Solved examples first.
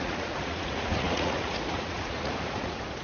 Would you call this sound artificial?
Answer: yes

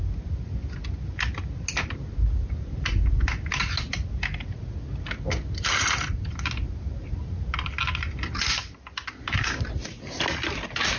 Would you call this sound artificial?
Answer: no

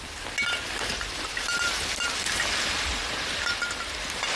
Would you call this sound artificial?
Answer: no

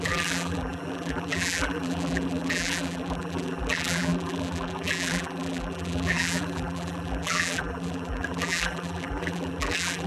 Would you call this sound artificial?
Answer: yes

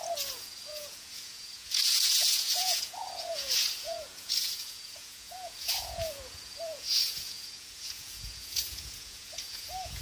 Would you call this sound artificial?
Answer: yes